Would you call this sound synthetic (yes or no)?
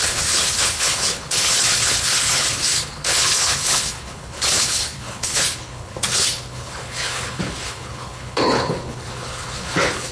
yes